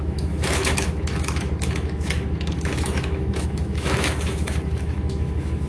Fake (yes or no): yes